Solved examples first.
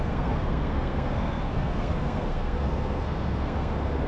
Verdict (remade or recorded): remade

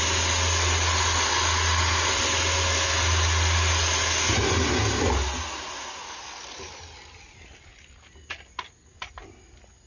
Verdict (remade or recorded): recorded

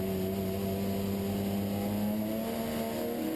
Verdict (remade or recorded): recorded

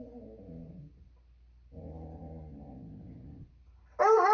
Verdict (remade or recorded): recorded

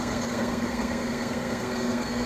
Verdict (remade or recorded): remade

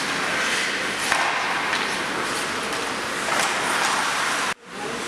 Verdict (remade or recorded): recorded